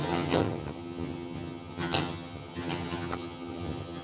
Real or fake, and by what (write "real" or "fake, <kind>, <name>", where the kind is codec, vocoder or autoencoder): fake, vocoder, HiFi-GAN